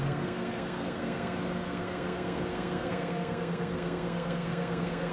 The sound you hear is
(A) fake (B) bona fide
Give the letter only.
A